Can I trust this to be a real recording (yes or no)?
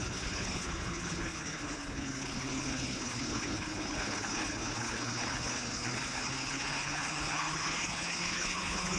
no